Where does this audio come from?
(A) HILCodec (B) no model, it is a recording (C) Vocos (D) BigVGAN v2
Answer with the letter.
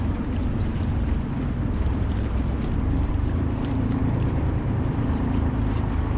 D